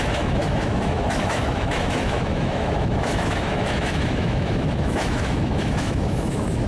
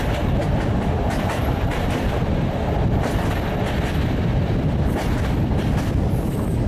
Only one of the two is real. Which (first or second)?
second